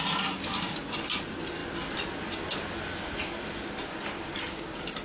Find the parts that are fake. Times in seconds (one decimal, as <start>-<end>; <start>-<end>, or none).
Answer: none

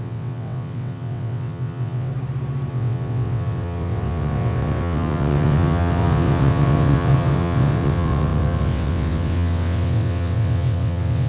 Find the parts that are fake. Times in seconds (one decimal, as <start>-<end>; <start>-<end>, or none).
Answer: 0.0-2.1; 2.7-11.3

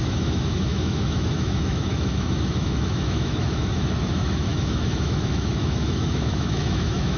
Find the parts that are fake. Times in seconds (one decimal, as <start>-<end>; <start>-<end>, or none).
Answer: 0.0-7.2

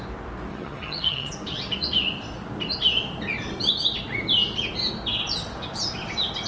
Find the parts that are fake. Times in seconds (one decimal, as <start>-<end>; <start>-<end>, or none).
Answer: 0.5-1.3